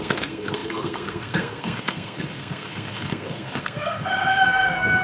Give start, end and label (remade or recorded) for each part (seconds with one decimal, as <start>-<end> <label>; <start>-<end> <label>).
0.0-5.0 remade